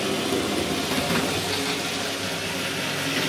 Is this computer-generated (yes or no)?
no